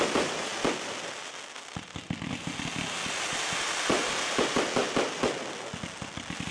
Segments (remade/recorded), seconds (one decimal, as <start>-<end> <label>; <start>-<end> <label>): 0.0-6.5 recorded

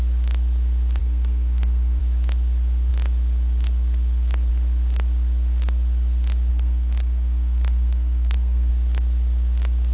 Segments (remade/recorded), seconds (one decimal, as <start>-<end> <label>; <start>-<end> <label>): 0.0-1.0 recorded; 1.0-2.0 remade; 2.0-6.5 recorded; 6.5-8.7 remade; 8.7-9.9 recorded